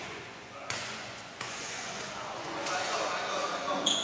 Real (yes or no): no